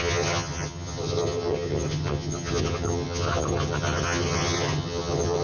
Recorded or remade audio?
remade